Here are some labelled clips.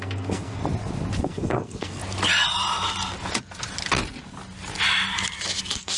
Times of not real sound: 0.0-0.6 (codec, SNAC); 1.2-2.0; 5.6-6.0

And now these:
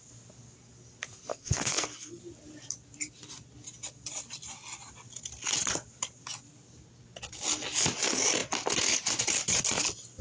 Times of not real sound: 1.3-2.2 (codec, SNAC)

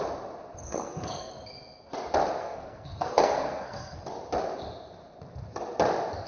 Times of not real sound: 0.6-1.3 (codec, SNAC); 2.4-4.0

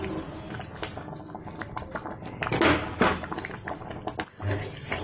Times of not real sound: none

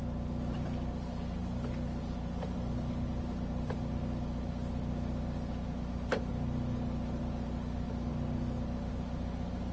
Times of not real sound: none

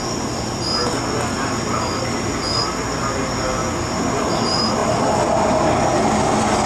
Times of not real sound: none

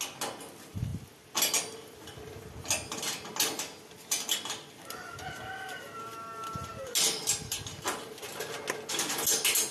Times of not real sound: none

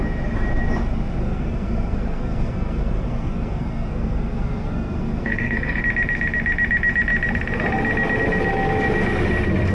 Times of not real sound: 1.2-5.8 (codec, SNAC)